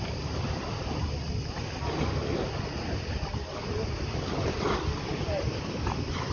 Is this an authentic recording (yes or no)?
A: yes